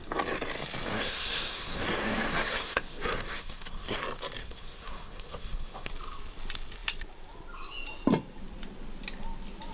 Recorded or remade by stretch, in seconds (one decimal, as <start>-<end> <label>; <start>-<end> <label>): 0.0-0.9 recorded; 0.9-4.0 remade; 4.0-4.4 recorded; 4.4-5.9 remade; 5.9-9.7 recorded